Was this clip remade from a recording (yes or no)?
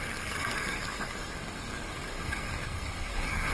yes